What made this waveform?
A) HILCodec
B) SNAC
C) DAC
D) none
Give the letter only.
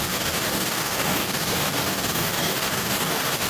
C